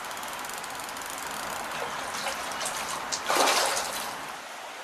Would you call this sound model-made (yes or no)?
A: no